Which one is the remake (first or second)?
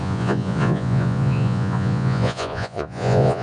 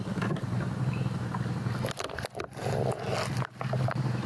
first